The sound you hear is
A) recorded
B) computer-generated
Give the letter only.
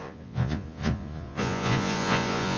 B